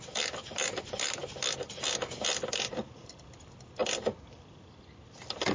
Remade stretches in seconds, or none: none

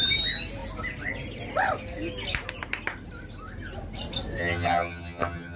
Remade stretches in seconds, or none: 4.4-5.6 (vocoder, HiFi-GAN)

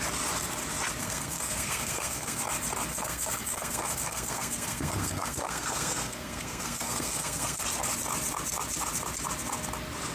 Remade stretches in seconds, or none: 1.0-2.4 (codec, SNAC); 2.9-7.6

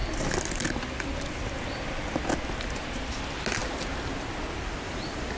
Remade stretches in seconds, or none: none

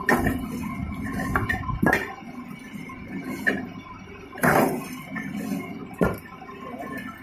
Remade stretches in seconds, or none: 0.8-3.6 (vocoder, BigVGAN v2); 5.8-6.4

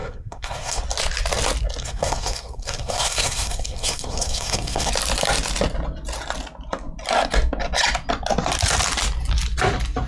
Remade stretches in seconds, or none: 0.0-0.8 (codec, SNAC); 1.8-4.9